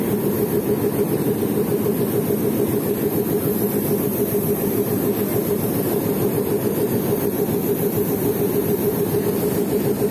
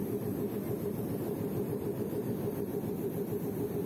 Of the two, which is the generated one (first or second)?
second